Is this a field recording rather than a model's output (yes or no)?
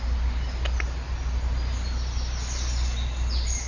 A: yes